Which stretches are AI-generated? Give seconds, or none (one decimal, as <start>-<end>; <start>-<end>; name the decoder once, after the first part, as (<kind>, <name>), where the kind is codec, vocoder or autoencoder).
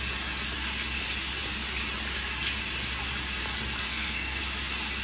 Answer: 3.9-4.4 (codec, SNAC)